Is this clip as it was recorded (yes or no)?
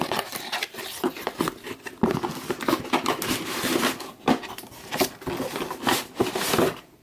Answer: yes